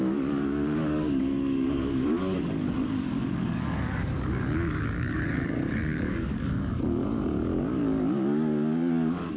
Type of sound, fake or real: fake